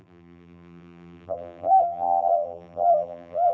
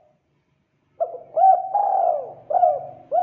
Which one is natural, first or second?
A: second